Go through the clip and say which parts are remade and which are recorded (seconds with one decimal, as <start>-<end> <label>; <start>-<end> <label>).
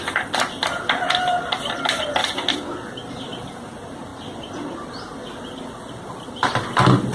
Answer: 0.0-7.1 recorded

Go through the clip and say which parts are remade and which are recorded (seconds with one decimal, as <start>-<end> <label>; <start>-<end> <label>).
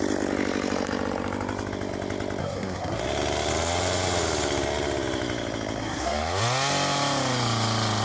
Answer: 0.0-2.4 recorded; 2.4-3.0 remade; 3.0-5.8 recorded; 5.8-6.4 remade; 6.4-8.0 recorded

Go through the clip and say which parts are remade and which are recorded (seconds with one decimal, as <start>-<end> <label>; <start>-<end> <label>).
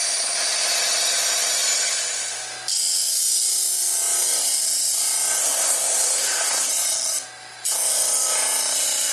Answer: 0.0-5.4 recorded; 5.4-6.7 remade; 6.7-9.1 recorded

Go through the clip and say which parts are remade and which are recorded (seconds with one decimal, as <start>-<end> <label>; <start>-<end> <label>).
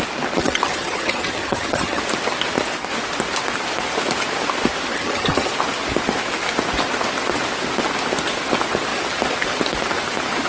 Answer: 0.0-0.4 recorded; 0.4-2.0 remade; 2.0-4.9 recorded; 4.9-5.5 remade; 5.5-10.5 recorded